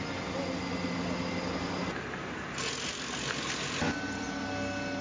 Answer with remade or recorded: recorded